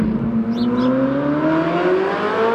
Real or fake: real